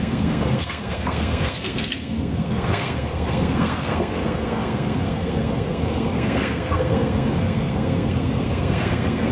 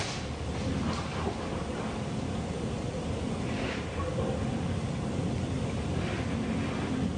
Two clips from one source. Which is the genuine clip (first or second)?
second